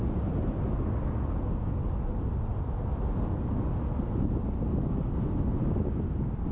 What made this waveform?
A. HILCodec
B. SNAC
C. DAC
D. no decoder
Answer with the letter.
D